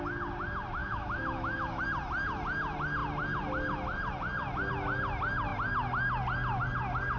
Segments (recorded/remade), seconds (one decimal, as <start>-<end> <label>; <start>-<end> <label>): 0.0-0.8 recorded; 0.8-1.8 remade; 1.8-7.2 recorded

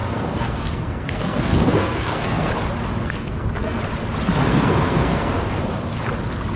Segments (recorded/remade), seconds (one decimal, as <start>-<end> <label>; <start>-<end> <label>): 0.0-2.5 remade; 2.5-3.0 recorded; 3.0-3.8 remade; 3.8-4.5 recorded; 4.5-5.4 remade; 5.4-6.6 recorded

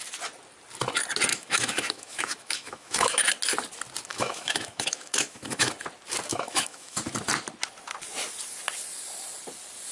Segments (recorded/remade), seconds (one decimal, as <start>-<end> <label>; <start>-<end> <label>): 0.0-1.3 recorded; 1.3-3.2 remade; 3.2-4.1 recorded; 4.1-5.7 remade; 5.7-6.3 recorded; 6.3-7.0 remade; 7.0-9.9 recorded

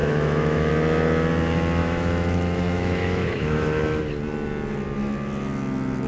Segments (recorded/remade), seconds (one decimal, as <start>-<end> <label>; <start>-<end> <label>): 0.0-0.7 remade; 0.7-1.8 recorded; 1.8-3.8 remade; 3.8-6.1 recorded

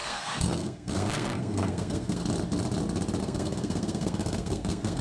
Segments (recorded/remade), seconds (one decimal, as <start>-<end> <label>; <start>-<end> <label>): 0.0-2.2 remade; 2.2-3.2 recorded; 3.2-5.0 remade

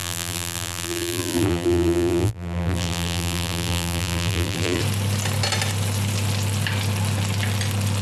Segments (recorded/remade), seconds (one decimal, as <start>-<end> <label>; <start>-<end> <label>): 0.0-4.8 remade; 4.8-8.0 recorded

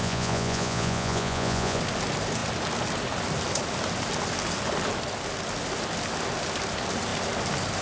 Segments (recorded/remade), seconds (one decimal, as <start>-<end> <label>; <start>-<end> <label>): 0.0-1.8 remade; 1.8-7.8 recorded